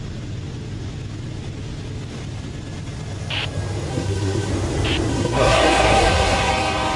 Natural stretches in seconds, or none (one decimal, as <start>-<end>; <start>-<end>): 0.0-3.9; 4.5-5.1; 6.5-7.0